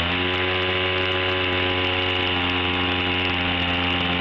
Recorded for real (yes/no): yes